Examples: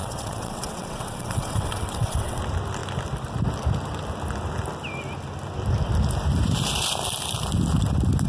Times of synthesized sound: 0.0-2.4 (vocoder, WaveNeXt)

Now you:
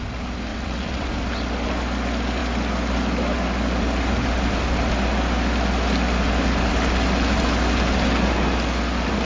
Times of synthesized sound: 0.5-1.1 (vocoder, WaveNeXt)

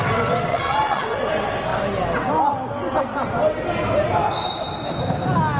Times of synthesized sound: 0.5-1.2 (vocoder, WaveNeXt)